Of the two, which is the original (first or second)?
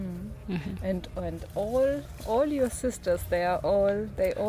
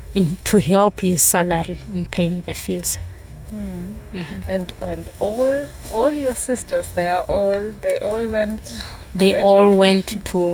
first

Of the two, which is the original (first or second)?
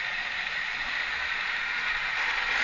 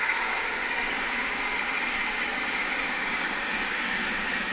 first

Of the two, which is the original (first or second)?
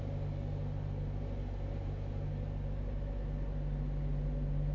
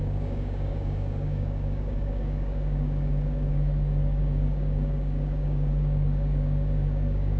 first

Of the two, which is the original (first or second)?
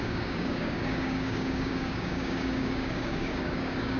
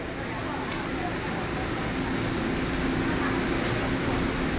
second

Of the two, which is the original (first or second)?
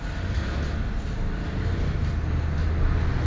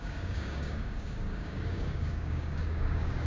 first